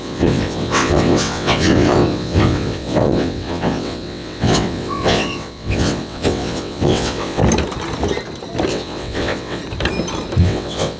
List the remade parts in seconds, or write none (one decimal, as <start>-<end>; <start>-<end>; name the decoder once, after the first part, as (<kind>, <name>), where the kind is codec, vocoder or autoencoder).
0.0-7.4 (vocoder, WaveNeXt); 8.7-9.6; 10.4-11.0